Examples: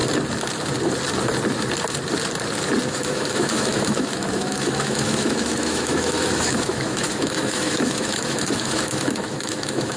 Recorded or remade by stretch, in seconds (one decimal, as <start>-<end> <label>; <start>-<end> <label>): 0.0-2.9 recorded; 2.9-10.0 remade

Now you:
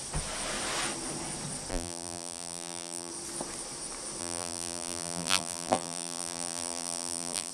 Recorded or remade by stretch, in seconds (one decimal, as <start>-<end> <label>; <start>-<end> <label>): 0.0-1.7 recorded; 1.7-3.1 remade; 3.1-4.2 recorded; 4.2-7.5 remade

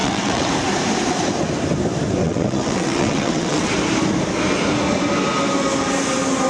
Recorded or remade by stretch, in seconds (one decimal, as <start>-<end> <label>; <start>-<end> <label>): 0.0-0.5 remade; 0.5-2.2 recorded; 2.2-3.7 remade; 3.7-6.5 recorded

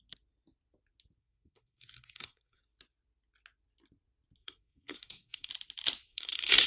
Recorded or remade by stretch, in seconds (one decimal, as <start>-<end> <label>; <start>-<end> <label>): 0.0-1.2 recorded; 1.2-2.6 remade; 2.6-4.4 recorded; 4.4-5.5 remade; 5.5-6.1 recorded; 6.1-6.7 remade

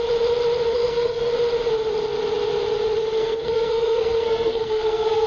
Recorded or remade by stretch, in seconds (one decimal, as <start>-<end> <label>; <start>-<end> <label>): 0.0-0.7 recorded; 0.7-1.3 remade; 1.3-3.2 recorded; 3.2-5.3 remade